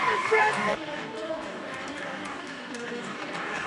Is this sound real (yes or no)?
no